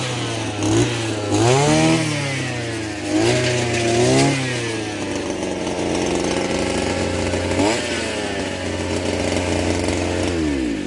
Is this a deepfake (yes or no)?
no